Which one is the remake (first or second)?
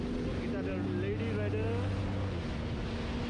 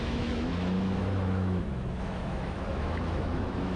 second